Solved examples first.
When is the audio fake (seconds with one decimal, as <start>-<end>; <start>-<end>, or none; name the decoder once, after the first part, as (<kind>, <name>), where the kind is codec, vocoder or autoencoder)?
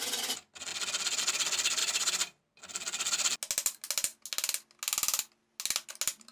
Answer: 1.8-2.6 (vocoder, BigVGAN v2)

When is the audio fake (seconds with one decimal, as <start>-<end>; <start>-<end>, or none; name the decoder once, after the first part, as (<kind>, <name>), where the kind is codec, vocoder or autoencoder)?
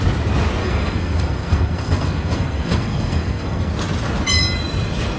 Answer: 0.6-3.7 (codec, SNAC)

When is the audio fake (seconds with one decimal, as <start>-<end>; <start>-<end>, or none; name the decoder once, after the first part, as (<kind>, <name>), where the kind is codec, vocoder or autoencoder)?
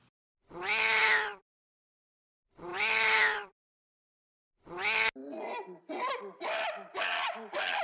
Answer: 1.0-1.7 (vocoder, BigVGAN v2); 2.7-4.4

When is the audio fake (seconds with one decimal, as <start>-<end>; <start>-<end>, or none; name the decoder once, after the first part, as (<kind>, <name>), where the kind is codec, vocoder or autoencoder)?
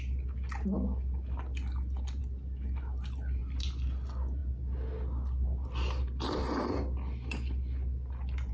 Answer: none